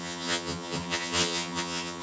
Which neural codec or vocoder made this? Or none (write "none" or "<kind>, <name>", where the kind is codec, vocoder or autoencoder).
vocoder, HiFi-GAN